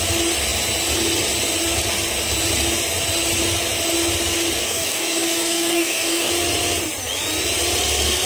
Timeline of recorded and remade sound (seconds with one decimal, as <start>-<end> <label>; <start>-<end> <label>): 0.0-4.6 recorded; 4.6-6.3 remade; 6.3-8.3 recorded